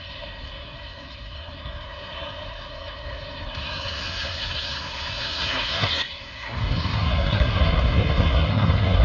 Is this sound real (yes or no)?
no